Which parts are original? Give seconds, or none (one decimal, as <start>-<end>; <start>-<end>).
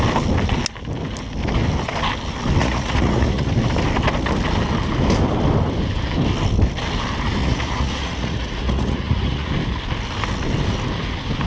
0.0-2.6; 3.5-7.4; 9.5-11.5